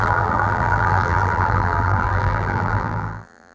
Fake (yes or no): yes